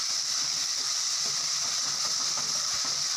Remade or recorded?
remade